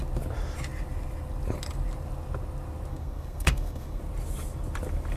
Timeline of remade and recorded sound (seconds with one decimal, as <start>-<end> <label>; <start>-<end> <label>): 0.0-2.9 recorded; 2.9-4.0 remade; 4.0-5.2 recorded